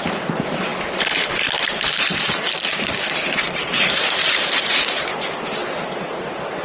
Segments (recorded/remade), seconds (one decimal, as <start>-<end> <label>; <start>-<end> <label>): 0.0-5.6 remade; 5.6-6.6 recorded